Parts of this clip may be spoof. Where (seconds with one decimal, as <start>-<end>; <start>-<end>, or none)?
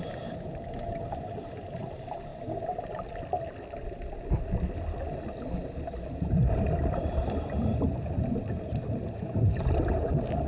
0.0-2.3; 6.1-10.5